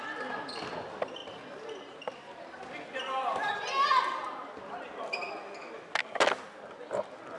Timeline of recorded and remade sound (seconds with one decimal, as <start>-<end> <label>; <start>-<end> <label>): 0.0-7.4 recorded